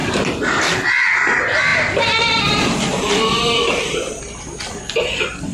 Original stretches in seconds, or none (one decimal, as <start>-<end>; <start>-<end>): 0.6-1.7; 4.2-5.5